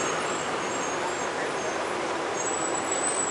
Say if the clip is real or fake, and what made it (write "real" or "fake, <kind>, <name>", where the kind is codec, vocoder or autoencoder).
real